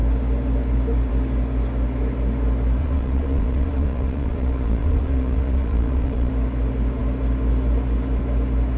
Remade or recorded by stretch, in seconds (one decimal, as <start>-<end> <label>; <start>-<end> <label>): 0.0-2.8 recorded; 2.8-6.3 remade; 6.3-8.8 recorded